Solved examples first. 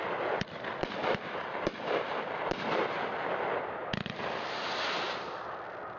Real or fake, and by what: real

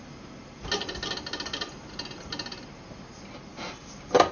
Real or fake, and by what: real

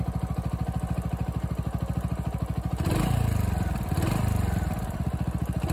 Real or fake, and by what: real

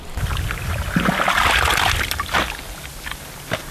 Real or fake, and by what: real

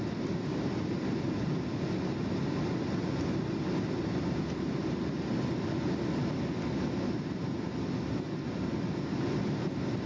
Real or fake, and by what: real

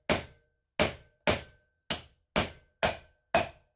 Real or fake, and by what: real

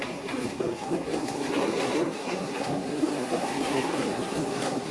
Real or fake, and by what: fake, codec, SNAC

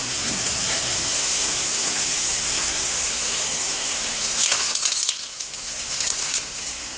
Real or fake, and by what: fake, codec, SNAC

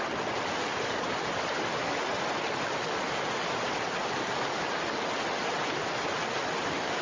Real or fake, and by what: real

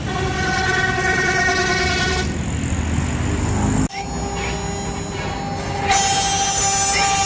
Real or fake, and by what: real